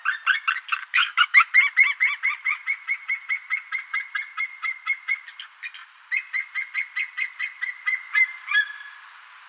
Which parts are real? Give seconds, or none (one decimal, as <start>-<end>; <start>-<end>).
0.0-0.9; 1.5-9.5

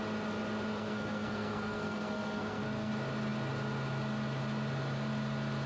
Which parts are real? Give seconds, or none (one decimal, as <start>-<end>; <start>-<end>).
0.0-0.7; 2.9-5.7

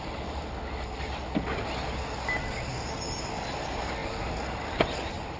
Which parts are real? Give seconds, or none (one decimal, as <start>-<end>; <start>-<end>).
0.0-5.4

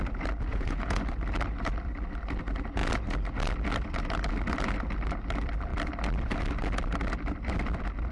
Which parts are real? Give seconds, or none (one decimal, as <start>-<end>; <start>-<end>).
0.0-0.5; 1.0-8.1

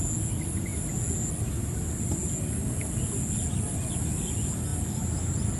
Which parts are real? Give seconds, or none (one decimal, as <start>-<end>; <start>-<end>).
0.0-5.6